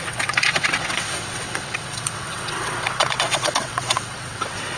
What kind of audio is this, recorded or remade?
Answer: remade